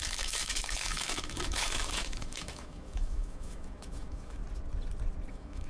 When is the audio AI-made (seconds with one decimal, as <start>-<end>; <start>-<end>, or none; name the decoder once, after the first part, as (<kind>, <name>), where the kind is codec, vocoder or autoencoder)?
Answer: 0.0-4.4 (autoencoder, DAC-VAE); 5.3-5.7